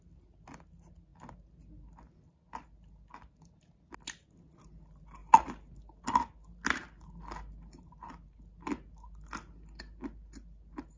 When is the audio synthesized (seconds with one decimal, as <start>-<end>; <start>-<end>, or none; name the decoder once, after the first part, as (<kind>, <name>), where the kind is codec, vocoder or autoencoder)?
none